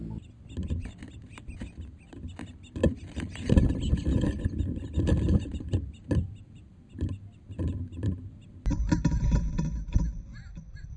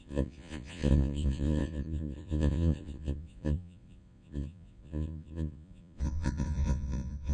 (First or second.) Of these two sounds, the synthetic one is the second